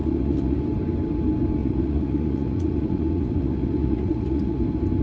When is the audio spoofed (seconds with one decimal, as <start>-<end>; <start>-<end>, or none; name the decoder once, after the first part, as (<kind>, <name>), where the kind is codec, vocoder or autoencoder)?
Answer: 0.0-0.6 (vocoder, Vocos); 1.6-4.6